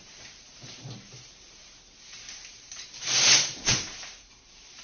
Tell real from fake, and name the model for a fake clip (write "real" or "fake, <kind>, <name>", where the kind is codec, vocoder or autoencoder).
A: fake, vocoder, BigVGAN v2